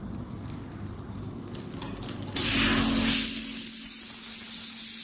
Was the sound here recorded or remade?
recorded